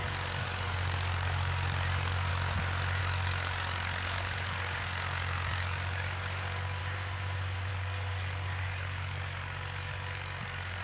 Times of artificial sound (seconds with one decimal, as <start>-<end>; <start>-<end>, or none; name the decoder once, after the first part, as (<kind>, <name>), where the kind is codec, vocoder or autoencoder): 0.0-2.3 (codec, DAC); 3.0-6.8; 7.7-10.8

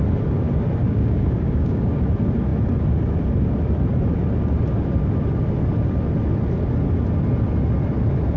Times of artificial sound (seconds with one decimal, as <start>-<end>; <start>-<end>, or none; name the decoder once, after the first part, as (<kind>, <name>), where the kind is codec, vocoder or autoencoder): 0.8-2.0 (codec, DAC)

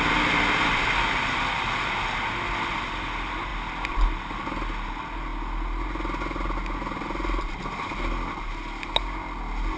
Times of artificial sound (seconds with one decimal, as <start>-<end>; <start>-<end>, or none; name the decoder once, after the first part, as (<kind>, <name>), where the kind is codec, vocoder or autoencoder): none

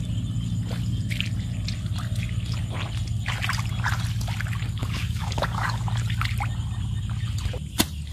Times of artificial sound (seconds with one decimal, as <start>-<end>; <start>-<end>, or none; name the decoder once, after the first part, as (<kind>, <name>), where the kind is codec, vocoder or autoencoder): 4.8-5.8 (codec, DAC)

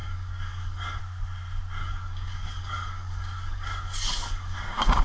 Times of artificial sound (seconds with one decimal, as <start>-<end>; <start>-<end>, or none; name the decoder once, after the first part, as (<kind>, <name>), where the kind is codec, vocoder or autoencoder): 0.0-1.0 (codec, DAC); 1.8-5.0

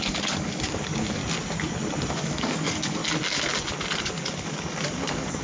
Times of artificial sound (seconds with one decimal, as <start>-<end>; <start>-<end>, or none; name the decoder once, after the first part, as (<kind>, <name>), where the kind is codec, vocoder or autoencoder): 0.0-1.2 (codec, DAC); 2.1-3.0; 4.0-5.4

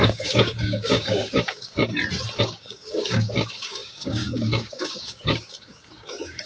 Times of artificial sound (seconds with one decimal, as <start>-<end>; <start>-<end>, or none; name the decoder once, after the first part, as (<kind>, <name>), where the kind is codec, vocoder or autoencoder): 0.0-1.9 (codec, DAC); 2.4-6.5

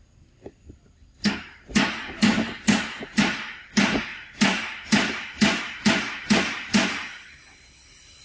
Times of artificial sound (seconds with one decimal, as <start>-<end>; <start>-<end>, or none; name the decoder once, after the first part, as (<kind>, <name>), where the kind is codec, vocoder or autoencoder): none